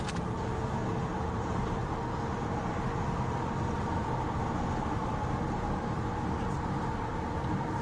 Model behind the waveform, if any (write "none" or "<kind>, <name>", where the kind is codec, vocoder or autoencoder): none